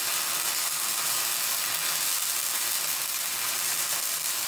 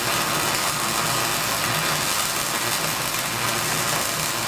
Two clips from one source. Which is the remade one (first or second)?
first